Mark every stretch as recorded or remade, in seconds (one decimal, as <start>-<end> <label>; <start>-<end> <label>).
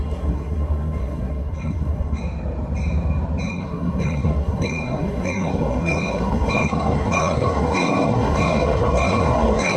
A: 0.0-2.2 remade; 2.2-3.5 recorded; 3.5-9.8 remade